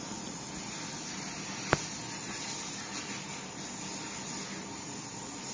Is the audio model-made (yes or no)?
no